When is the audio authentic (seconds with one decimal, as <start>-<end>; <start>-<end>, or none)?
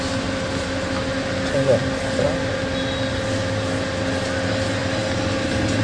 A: 0.0-5.8